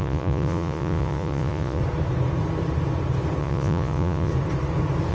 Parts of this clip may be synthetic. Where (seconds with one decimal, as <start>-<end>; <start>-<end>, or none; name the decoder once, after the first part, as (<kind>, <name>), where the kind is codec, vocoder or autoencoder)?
0.0-1.8 (vocoder, Vocos); 3.4-4.3